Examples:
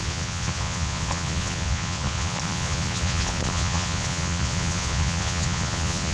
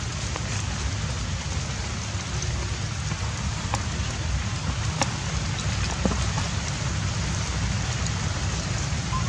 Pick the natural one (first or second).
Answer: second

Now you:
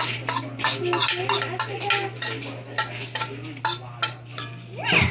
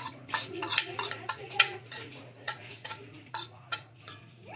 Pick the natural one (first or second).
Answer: first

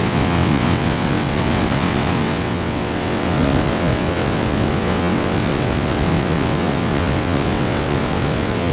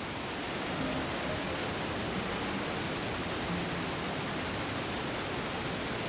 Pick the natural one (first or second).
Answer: second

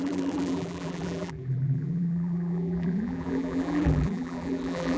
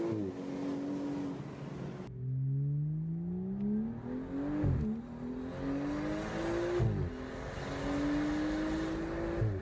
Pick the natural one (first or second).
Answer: second